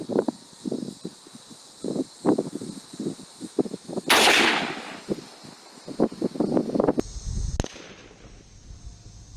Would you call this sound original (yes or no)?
yes